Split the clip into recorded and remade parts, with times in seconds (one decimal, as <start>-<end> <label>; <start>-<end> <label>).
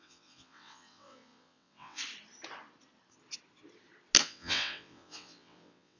0.0-2.0 remade; 2.0-4.2 recorded; 4.2-6.0 remade